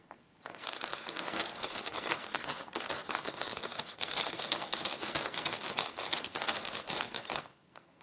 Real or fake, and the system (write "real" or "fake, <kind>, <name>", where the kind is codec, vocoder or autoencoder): fake, codec, SNAC